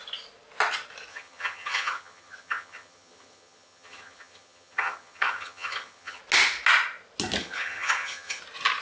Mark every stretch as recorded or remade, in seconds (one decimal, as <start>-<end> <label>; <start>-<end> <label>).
0.0-1.1 recorded; 1.1-6.2 remade; 6.2-7.4 recorded; 7.4-8.4 remade; 8.4-8.8 recorded